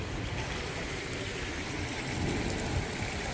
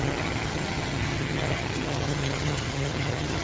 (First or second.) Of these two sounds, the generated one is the second